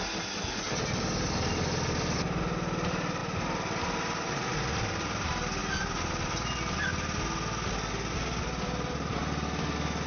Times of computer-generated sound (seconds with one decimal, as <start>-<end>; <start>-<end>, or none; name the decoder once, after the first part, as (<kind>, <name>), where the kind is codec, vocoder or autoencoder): 5.6-6.1 (vocoder, BigVGAN v2)